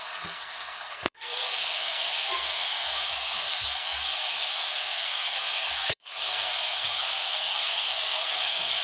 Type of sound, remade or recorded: remade